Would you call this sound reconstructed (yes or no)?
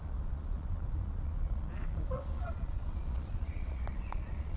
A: yes